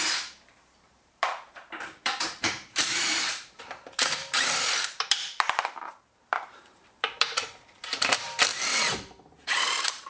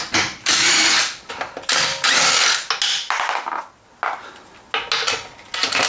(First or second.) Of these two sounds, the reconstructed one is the first